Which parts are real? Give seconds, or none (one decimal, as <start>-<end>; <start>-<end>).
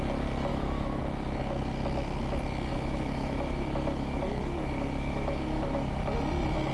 0.0-0.5; 1.0-2.7; 6.0-6.7